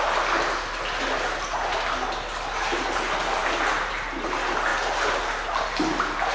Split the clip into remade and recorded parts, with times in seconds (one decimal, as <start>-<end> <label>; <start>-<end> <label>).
0.0-6.3 recorded